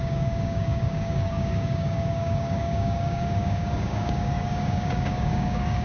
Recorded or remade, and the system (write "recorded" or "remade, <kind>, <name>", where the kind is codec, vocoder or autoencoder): remade, codec, DAC